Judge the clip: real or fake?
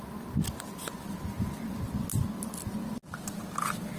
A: real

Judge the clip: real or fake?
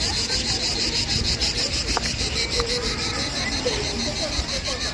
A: fake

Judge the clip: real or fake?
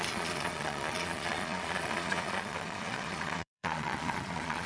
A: fake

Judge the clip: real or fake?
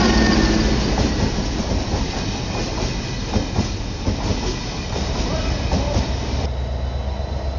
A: real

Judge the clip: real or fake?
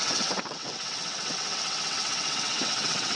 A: fake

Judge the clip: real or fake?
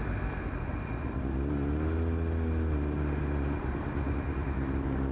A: real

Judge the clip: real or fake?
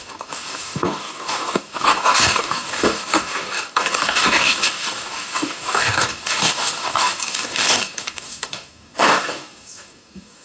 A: fake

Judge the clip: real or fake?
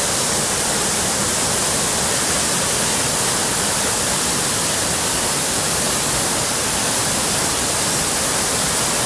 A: fake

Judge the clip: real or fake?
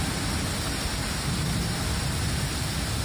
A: real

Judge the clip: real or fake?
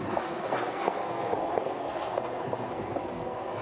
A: fake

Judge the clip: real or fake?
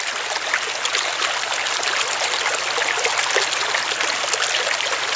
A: real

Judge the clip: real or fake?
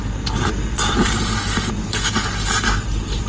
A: real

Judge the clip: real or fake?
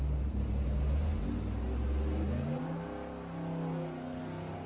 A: real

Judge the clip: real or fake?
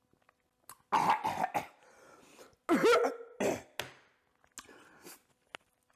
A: real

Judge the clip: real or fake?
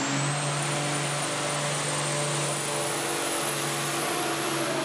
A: real